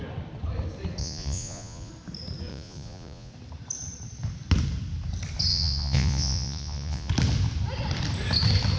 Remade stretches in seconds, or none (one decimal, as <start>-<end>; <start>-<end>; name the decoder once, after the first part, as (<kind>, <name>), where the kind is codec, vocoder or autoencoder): 1.0-1.9 (vocoder, Vocos); 2.5-3.3; 5.5-7.1